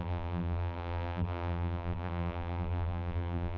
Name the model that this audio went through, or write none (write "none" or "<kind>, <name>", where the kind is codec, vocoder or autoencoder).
vocoder, BigVGAN v2